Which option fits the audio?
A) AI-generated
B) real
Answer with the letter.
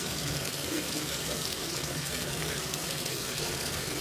A